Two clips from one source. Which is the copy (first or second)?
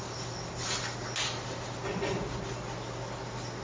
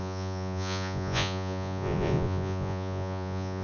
second